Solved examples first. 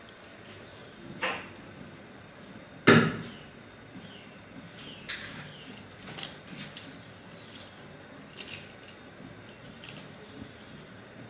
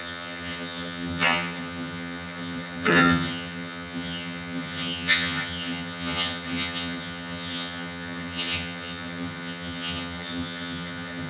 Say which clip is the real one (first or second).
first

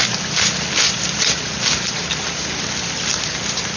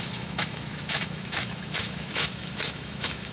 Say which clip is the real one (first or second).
first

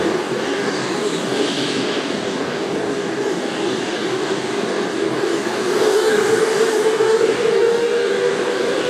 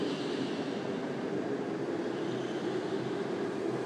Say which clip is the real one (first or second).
second